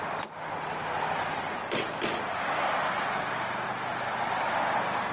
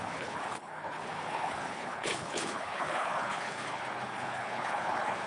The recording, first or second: first